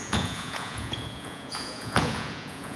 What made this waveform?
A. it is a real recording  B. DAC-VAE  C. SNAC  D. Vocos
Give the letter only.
D